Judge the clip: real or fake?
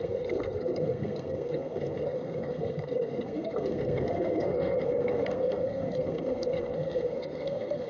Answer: fake